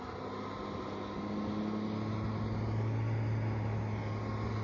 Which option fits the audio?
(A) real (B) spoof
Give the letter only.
A